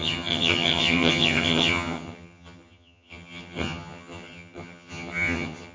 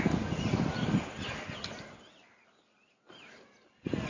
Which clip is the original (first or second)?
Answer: second